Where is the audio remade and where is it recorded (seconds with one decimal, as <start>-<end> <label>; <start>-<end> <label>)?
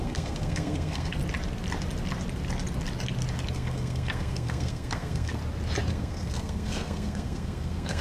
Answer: 0.0-1.2 remade; 1.2-3.5 recorded; 3.5-5.4 remade; 5.4-5.9 recorded; 5.9-8.0 remade